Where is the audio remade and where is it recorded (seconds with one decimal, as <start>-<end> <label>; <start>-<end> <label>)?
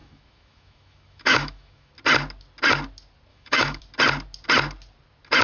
0.0-1.9 remade; 1.9-3.3 recorded; 3.3-3.8 remade; 3.8-5.4 recorded